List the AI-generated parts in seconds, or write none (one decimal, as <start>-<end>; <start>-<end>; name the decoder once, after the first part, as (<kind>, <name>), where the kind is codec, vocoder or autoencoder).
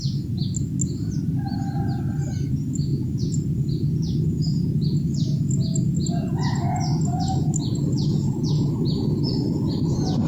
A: 2.9-4.0 (vocoder, BigVGAN v2)